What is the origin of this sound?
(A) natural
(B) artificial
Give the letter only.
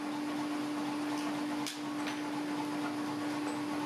A